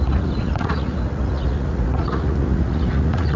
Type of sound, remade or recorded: remade